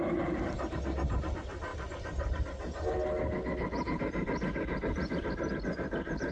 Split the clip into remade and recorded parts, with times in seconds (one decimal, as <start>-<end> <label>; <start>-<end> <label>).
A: 0.0-6.3 recorded